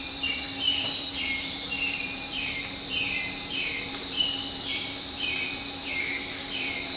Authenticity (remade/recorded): remade